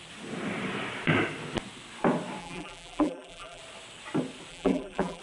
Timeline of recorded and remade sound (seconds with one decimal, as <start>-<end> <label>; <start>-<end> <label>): 0.0-2.4 recorded; 2.4-3.6 remade; 3.6-4.5 recorded; 4.5-5.2 remade